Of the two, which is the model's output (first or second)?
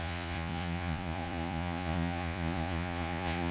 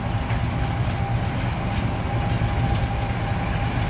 first